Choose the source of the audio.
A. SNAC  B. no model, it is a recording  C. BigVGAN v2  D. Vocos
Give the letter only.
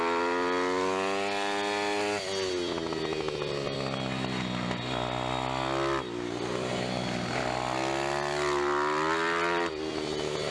B